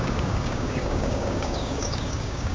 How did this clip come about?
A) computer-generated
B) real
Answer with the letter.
A